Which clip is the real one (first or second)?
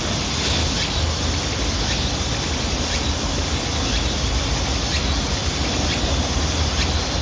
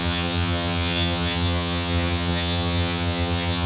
first